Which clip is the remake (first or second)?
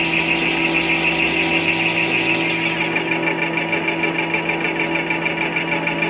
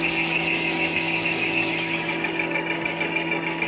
second